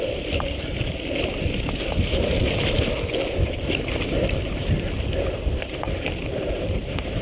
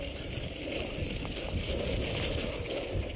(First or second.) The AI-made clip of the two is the first